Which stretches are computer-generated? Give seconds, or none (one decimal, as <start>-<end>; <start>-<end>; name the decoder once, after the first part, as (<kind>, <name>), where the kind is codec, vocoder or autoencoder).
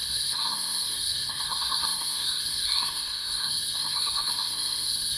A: 0.0-5.2 (codec, SNAC)